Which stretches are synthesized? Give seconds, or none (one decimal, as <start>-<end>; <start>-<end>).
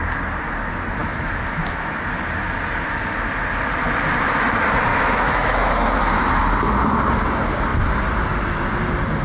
1.0-1.9; 4.9-6.0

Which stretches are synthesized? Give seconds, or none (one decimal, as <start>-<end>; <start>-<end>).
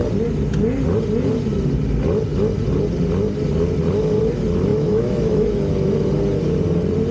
4.7-5.7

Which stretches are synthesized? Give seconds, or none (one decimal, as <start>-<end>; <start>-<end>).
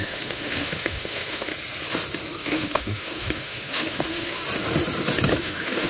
0.0-1.5; 2.4-4.4; 5.4-5.9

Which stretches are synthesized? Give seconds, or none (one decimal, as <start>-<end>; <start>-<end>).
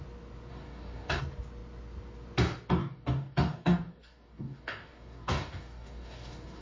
0.5-1.2; 2.8-6.6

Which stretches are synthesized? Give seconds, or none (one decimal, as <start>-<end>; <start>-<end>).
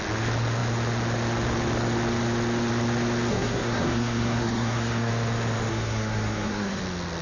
3.3-5.1; 5.7-6.8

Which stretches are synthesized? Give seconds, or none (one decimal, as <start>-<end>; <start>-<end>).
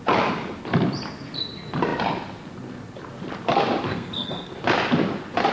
3.9-4.5